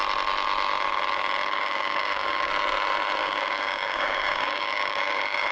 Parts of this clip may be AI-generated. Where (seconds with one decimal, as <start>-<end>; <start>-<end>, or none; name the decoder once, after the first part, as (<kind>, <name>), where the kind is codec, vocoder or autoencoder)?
1.4-2.5 (codec, DAC); 3.2-5.5